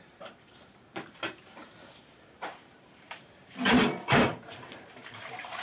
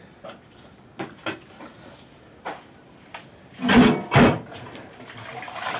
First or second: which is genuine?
second